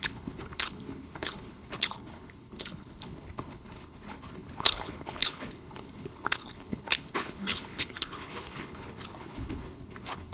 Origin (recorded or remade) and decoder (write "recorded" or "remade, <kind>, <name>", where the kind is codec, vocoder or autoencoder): remade, codec, HILCodec